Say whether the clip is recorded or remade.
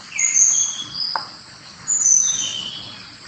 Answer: remade